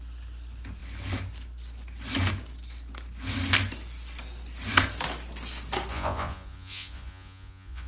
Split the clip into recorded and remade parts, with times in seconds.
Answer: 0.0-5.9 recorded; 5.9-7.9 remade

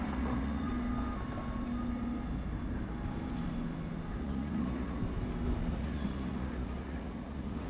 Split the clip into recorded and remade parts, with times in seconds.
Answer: 0.0-0.7 remade; 0.7-4.2 recorded; 4.2-5.0 remade; 5.0-5.7 recorded; 5.7-7.7 remade

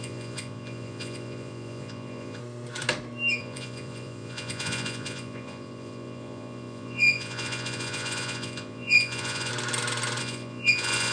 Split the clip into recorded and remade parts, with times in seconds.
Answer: 0.0-2.4 remade; 2.4-3.4 recorded; 3.4-9.5 remade; 9.5-10.2 recorded; 10.2-11.1 remade

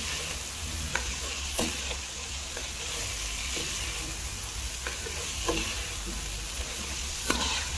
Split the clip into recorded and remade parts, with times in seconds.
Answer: 0.0-0.9 recorded; 0.9-2.9 remade; 2.9-6.6 recorded; 6.6-7.8 remade